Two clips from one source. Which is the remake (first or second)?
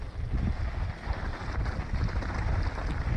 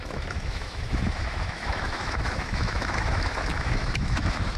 second